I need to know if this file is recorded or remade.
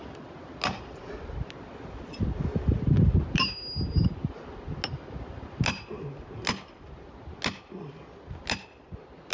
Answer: recorded